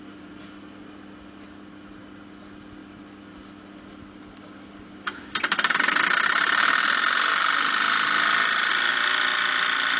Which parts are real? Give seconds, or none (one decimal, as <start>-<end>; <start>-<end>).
0.0-10.0